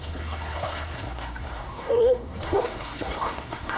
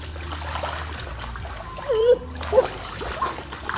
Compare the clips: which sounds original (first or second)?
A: second